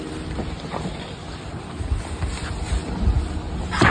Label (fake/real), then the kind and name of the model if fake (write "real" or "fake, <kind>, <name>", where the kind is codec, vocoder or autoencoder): real